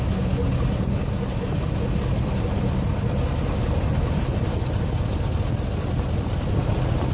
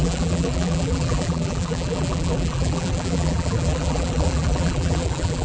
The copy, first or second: second